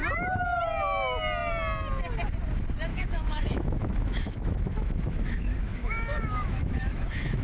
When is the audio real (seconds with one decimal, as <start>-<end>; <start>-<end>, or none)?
0.0-2.9